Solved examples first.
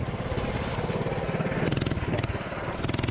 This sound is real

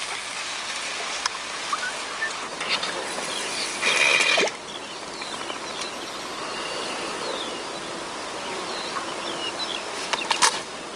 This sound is real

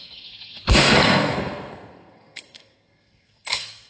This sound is fake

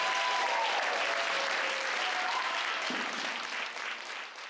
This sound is real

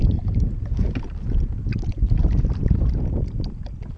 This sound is real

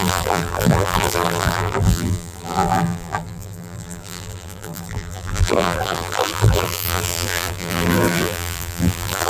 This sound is fake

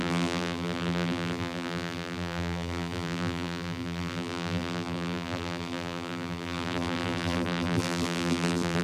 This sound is fake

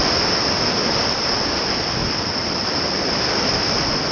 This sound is fake